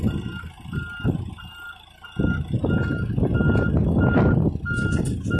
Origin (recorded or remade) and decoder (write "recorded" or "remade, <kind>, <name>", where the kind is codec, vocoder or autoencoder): recorded